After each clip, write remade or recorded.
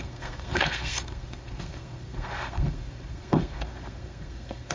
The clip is remade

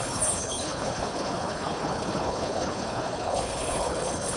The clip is remade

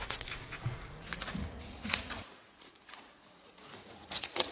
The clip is remade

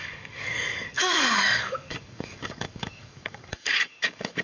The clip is remade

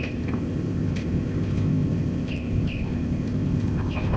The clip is remade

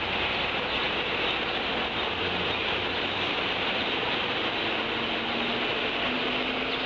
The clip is recorded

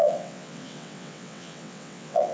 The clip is remade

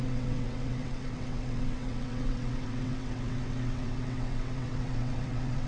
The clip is remade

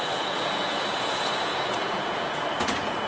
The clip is remade